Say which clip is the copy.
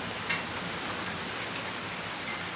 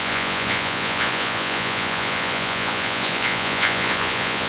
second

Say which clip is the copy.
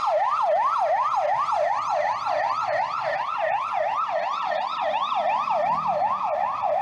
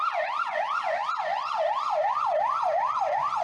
second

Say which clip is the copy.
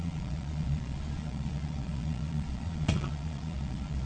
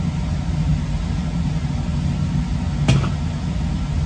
first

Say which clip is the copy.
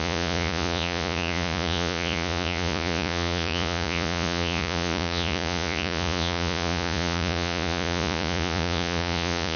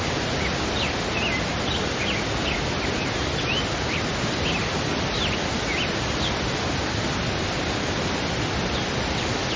first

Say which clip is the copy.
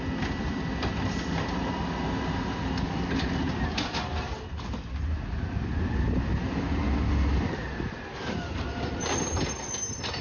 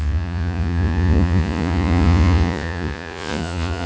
second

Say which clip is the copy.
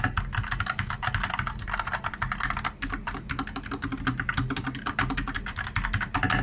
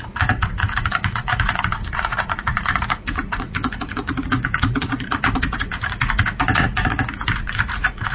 second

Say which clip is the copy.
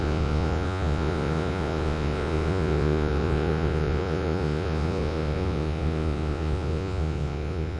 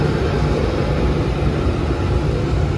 first